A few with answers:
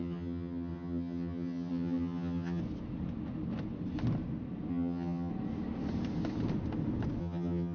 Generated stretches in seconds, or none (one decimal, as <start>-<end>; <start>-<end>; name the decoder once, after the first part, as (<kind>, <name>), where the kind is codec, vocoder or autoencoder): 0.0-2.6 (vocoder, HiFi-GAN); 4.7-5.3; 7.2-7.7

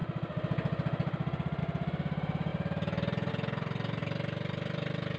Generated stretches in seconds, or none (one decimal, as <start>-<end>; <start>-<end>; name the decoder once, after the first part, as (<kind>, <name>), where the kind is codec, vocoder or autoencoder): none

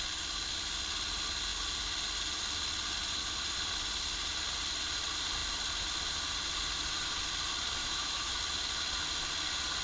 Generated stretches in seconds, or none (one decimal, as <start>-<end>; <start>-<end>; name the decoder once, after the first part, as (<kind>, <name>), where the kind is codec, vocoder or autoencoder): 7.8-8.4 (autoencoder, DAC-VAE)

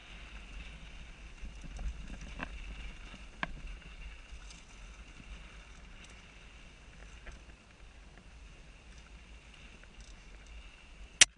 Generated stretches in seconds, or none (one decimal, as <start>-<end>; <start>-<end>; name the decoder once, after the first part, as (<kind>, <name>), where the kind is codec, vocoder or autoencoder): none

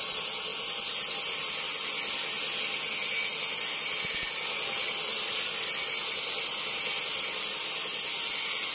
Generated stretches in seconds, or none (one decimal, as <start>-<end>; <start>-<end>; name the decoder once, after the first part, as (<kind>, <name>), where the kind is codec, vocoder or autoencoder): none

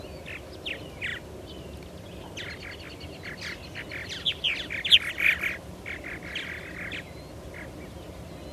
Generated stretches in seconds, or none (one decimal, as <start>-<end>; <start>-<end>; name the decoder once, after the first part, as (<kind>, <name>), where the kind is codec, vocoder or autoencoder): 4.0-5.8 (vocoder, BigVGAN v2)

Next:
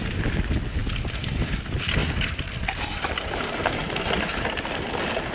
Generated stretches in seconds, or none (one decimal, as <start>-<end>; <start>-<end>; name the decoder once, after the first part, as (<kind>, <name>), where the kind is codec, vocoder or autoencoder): none